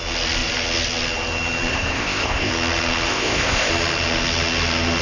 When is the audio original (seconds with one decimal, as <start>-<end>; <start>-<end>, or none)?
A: 0.0-1.7; 2.5-3.1; 3.7-5.0